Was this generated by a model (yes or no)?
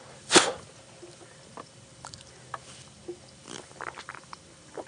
yes